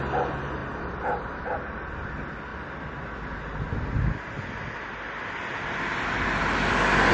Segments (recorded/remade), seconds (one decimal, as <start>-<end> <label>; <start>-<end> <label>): 0.0-7.1 recorded